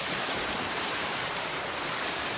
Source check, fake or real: fake